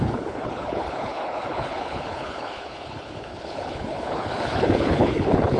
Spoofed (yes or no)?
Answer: yes